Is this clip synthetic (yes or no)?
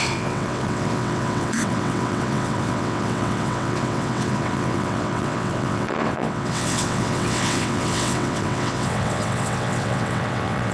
yes